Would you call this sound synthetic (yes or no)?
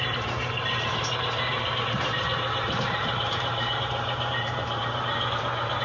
yes